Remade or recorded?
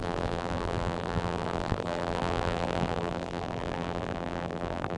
remade